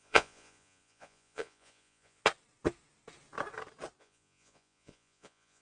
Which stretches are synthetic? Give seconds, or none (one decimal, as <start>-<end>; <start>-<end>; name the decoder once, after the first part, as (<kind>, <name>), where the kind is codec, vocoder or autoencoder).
0.0-2.2 (vocoder, Vocos); 4.0-5.6